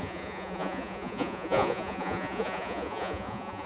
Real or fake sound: fake